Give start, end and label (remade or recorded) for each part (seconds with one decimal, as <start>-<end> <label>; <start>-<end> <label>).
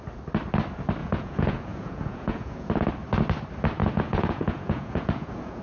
0.0-1.0 recorded; 1.0-2.7 remade; 2.7-3.8 recorded; 3.8-5.6 remade